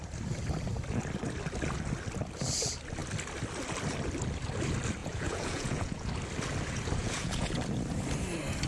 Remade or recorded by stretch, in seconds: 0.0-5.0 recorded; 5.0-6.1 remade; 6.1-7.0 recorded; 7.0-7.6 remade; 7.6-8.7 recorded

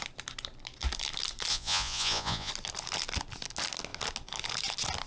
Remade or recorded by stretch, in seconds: 0.0-1.5 recorded; 1.5-2.5 remade; 2.5-5.1 recorded

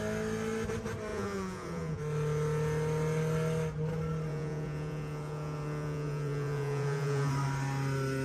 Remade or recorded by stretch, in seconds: 0.0-1.1 recorded; 1.1-2.0 remade; 2.0-4.3 recorded; 4.3-7.3 remade; 7.3-8.2 recorded

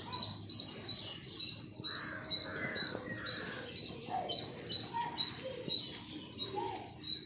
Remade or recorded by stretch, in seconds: 0.0-7.3 recorded

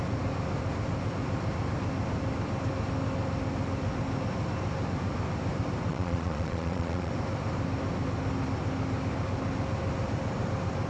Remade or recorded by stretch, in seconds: 0.0-5.9 recorded; 5.9-7.1 remade; 7.1-10.9 recorded